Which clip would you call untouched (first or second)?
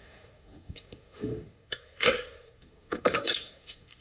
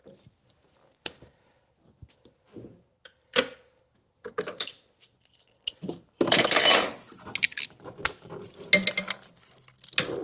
second